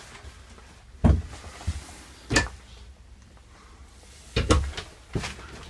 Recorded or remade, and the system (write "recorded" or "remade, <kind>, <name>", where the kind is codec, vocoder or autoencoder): recorded